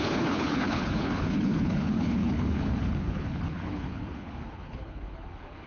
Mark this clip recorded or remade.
remade